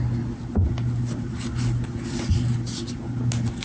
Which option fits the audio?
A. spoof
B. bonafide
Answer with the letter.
B